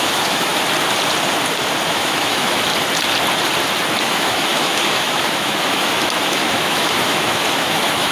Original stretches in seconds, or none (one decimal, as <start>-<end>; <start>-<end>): 0.5-1.9; 2.7-4.0